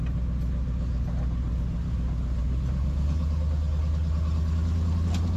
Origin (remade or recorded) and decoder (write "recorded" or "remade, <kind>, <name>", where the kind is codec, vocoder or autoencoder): recorded